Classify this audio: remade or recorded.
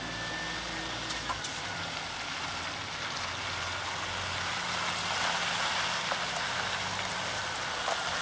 recorded